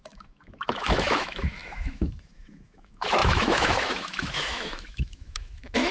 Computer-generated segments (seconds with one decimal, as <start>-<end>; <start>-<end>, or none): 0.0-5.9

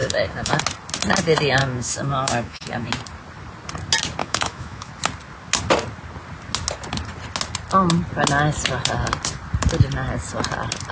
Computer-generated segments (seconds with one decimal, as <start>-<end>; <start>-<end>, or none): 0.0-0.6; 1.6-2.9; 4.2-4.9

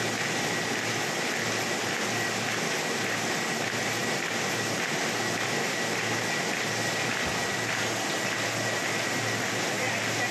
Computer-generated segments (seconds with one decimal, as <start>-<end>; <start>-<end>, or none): none

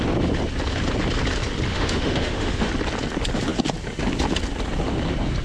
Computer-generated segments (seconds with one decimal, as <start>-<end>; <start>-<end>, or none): 1.7-2.7

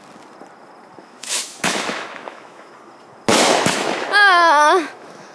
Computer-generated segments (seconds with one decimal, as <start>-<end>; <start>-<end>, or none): 1.0-2.7; 3.3-5.3

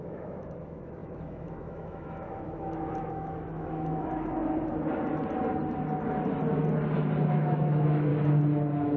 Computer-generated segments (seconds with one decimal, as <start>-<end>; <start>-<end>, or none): 0.0-4.4; 7.3-8.1

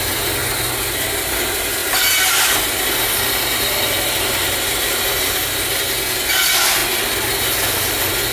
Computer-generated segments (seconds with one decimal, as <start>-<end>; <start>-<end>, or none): none

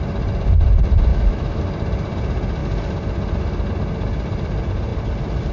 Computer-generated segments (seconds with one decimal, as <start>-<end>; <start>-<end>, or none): 1.1-1.6